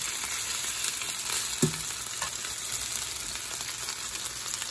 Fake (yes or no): no